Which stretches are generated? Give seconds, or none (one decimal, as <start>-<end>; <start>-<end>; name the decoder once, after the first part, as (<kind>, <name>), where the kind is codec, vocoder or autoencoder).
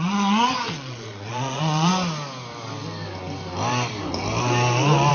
0.0-1.9 (vocoder, Vocos)